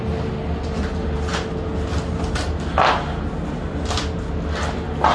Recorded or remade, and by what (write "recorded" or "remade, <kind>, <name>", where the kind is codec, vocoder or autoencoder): recorded